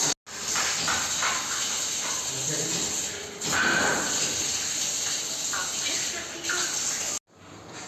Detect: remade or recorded recorded